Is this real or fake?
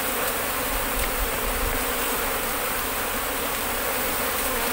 real